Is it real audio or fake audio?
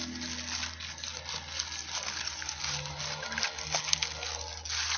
real